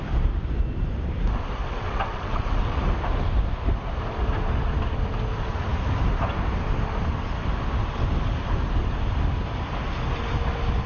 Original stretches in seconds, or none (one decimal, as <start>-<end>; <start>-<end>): 0.0-1.6; 2.8-10.9